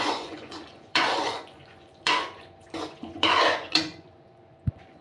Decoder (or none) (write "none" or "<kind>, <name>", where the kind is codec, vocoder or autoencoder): vocoder, Vocos